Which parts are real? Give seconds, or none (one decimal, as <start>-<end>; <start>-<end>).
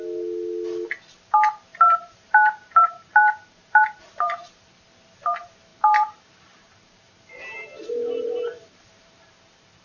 0.0-1.7; 4.6-5.7; 9.3-9.8